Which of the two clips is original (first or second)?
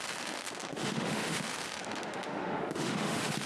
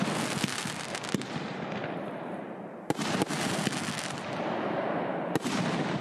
second